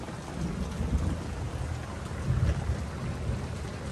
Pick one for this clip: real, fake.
real